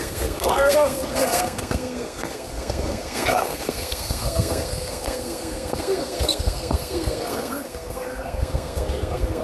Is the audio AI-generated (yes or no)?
yes